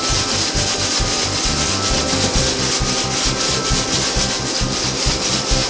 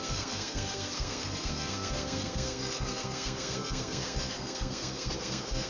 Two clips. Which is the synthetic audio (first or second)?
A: second